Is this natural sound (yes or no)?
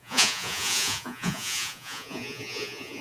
no